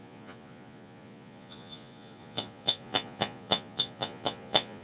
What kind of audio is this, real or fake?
fake